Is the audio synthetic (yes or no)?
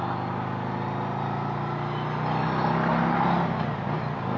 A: no